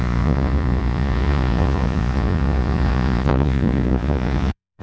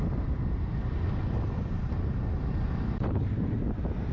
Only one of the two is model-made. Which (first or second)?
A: first